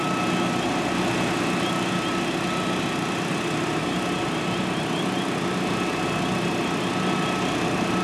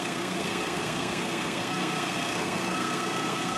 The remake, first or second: second